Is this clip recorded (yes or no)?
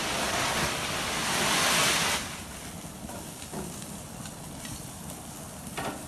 yes